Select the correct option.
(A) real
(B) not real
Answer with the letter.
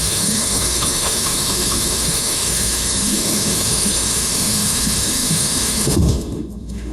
B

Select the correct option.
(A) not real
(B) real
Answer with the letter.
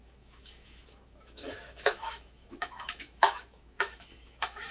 A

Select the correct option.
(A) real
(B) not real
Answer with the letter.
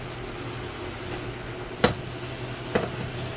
A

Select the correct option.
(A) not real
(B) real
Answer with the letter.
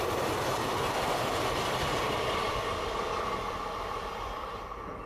B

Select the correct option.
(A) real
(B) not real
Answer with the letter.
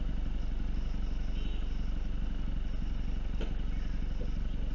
A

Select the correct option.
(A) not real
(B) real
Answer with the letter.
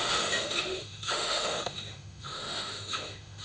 A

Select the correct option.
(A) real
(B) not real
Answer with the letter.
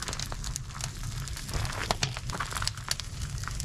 A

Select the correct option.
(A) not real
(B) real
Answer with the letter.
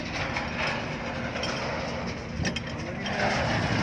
B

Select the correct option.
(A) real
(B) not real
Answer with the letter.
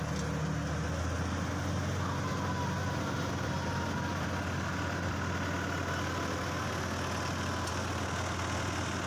A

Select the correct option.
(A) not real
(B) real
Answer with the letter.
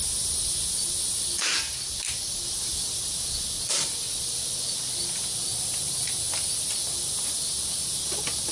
B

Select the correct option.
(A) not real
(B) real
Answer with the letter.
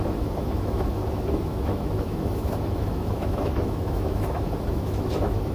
A